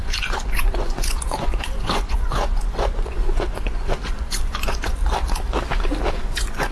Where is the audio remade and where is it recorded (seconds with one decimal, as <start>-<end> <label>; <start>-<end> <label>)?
0.0-5.0 remade; 5.0-6.1 recorded; 6.1-6.7 remade